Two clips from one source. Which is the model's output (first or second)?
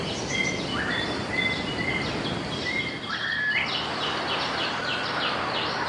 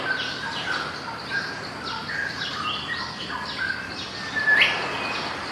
second